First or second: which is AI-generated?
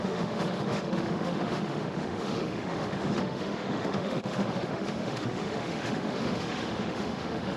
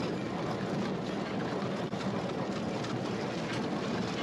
first